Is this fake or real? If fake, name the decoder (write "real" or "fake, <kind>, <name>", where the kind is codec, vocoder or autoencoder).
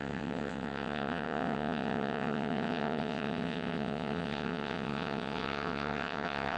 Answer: fake, vocoder, WaveNeXt